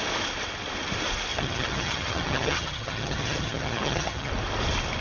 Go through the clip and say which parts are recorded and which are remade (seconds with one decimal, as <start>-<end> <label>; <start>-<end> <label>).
0.0-1.3 recorded; 1.3-4.3 remade; 4.3-5.0 recorded